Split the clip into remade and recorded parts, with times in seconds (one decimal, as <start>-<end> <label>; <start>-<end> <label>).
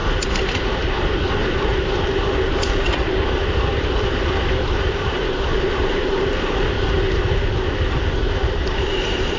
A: 0.0-0.6 recorded; 0.6-9.4 remade